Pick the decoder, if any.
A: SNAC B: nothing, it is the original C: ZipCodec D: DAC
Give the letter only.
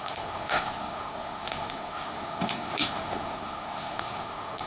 A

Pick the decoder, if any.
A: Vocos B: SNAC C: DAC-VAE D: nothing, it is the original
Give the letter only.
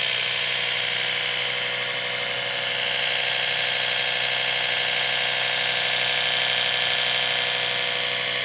D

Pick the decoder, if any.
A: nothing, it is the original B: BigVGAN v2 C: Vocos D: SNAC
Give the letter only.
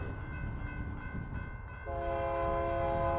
A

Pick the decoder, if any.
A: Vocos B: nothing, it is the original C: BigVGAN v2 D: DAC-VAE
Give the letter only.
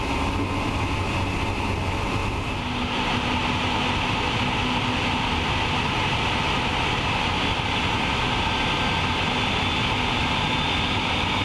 B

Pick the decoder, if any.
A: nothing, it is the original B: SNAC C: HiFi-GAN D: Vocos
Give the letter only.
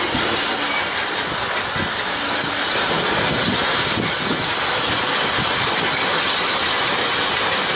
A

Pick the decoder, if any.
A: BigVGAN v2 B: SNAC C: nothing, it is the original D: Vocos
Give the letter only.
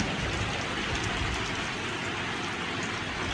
C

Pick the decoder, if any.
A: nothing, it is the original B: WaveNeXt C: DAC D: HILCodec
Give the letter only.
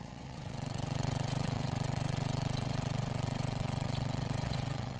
B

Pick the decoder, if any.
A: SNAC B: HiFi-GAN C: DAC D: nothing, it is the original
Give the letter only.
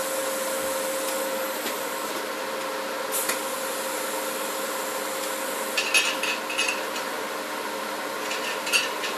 D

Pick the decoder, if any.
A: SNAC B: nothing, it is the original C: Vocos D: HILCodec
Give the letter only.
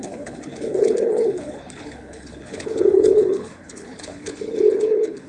D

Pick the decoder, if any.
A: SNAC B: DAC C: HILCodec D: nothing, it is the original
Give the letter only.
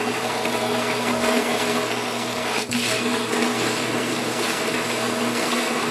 A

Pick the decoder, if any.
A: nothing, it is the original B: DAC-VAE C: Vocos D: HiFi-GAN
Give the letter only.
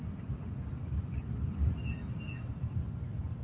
A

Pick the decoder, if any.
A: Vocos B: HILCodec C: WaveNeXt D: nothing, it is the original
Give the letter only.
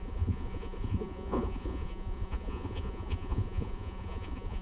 A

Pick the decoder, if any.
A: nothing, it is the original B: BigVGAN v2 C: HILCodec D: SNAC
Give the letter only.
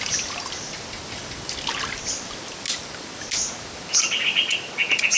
A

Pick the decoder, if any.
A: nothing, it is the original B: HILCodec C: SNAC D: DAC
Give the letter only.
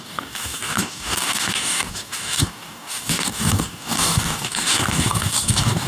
D